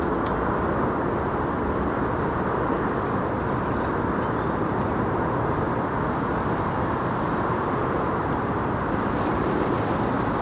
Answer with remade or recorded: recorded